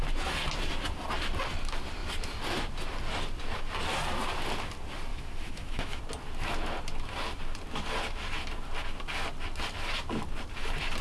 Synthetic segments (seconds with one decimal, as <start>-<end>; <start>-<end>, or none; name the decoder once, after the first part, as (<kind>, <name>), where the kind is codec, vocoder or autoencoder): 5.1-6.0 (autoencoder, DAC-VAE)